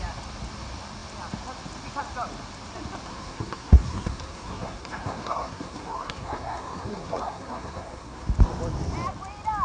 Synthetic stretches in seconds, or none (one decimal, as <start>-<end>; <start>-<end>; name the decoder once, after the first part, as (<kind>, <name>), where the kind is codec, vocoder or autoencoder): 3.1-8.3 (codec, SNAC)